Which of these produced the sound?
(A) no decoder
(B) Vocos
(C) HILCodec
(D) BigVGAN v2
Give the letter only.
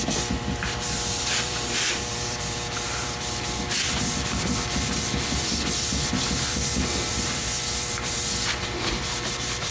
D